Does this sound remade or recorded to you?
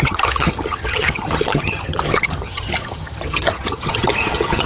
remade